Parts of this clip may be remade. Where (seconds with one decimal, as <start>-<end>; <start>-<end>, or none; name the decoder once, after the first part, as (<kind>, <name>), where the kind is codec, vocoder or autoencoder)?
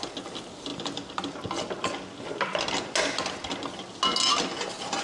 none